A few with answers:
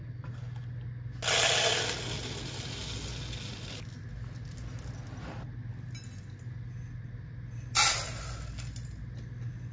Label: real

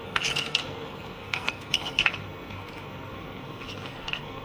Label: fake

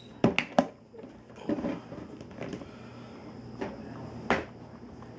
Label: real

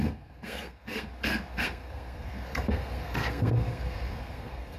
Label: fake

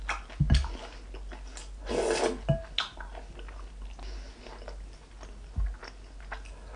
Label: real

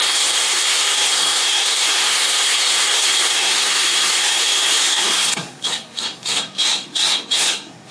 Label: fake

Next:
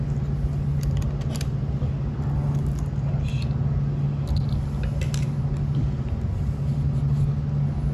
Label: real